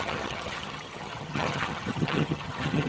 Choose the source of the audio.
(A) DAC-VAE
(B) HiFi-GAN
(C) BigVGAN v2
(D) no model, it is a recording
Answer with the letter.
B